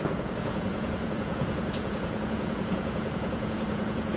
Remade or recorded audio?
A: remade